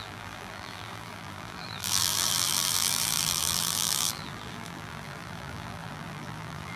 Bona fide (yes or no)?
no